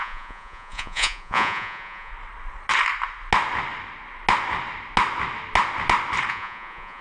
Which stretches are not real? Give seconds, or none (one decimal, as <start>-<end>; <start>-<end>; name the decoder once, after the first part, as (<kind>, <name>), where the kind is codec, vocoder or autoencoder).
0.0-2.1 (vocoder, Vocos); 6.3-7.0